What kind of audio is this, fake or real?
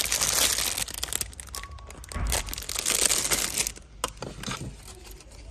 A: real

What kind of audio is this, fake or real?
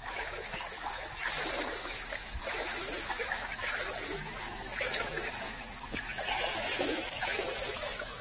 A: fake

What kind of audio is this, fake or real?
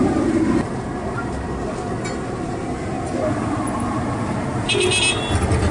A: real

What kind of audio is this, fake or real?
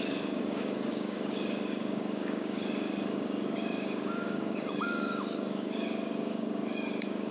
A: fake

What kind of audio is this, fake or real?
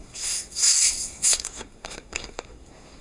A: fake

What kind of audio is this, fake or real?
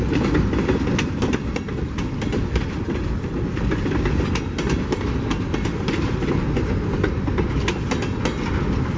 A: real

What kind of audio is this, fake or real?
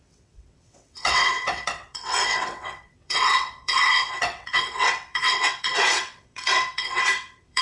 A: fake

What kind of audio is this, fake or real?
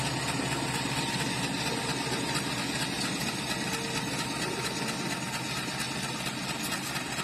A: real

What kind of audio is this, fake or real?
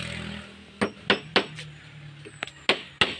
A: real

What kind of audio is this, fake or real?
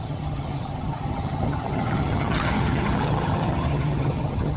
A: fake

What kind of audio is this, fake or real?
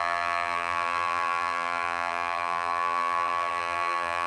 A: fake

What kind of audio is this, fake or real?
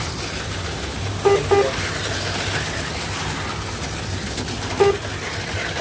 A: real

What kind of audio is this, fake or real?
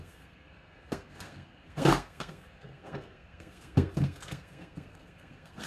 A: fake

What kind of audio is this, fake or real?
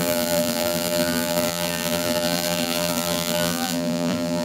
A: fake